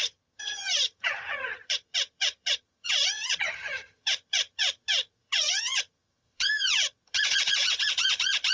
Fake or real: fake